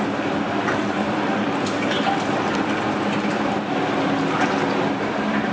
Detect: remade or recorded recorded